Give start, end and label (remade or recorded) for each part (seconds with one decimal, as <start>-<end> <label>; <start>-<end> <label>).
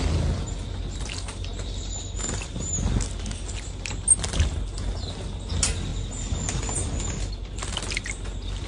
0.0-8.7 recorded